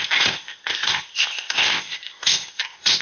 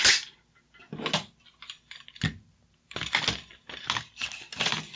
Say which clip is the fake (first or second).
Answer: first